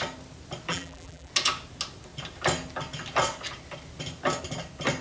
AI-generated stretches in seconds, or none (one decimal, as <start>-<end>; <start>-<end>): 0.7-1.3